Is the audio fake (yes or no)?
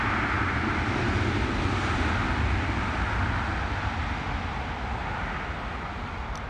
no